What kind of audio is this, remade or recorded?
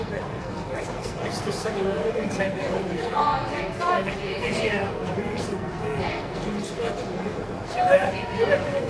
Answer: remade